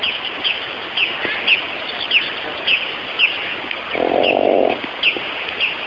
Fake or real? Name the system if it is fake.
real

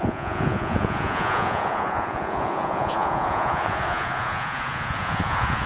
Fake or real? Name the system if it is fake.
fake, vocoder, Vocos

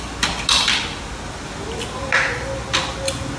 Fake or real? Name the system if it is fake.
real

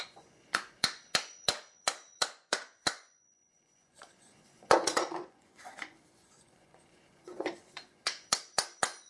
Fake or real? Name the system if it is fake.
fake, vocoder, Vocos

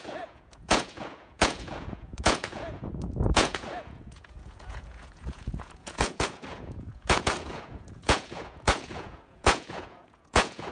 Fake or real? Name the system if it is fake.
fake, vocoder, Vocos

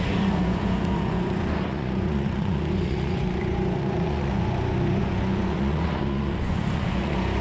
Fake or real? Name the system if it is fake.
fake, vocoder, Vocos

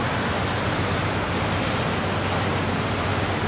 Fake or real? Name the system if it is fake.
real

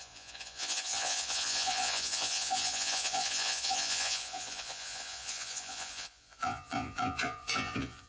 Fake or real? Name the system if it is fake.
fake, vocoder, Vocos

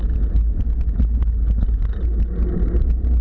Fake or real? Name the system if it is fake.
real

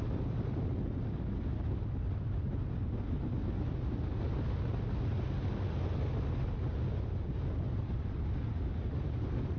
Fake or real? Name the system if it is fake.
real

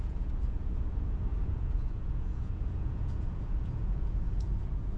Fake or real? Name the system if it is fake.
fake, vocoder, Vocos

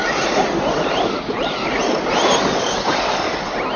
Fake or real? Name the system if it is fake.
real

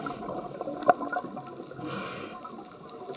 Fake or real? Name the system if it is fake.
real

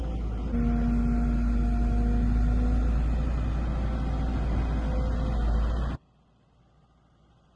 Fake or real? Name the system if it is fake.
real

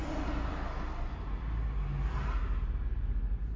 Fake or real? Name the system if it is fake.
real